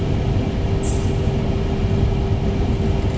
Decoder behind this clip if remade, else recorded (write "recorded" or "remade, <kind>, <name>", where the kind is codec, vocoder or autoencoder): recorded